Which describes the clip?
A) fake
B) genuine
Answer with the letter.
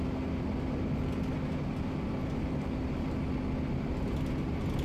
B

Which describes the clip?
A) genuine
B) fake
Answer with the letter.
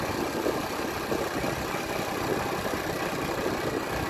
A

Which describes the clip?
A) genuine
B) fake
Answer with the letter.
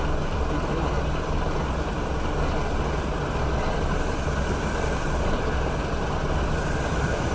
A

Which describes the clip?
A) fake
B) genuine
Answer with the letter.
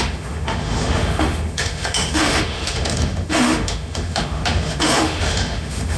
A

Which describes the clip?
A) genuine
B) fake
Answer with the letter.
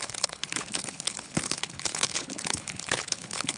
B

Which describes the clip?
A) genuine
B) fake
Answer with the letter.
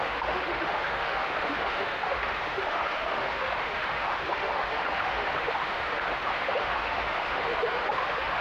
B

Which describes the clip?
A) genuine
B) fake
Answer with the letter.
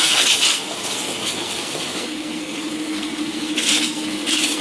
B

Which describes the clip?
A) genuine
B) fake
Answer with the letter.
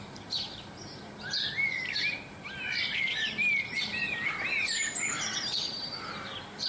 A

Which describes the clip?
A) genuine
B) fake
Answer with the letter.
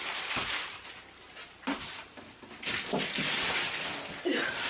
A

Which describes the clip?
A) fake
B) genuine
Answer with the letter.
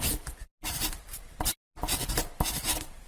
B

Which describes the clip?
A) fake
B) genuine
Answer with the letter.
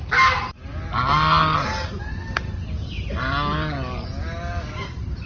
B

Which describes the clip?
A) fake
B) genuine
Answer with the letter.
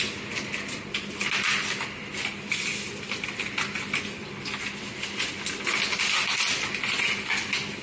B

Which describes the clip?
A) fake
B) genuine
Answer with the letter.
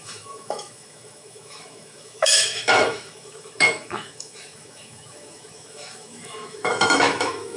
A